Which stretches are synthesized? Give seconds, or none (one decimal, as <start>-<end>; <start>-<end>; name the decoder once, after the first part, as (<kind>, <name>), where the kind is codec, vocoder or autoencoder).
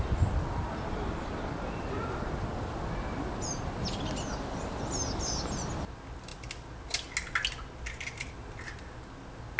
none